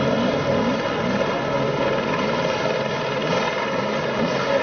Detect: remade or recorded recorded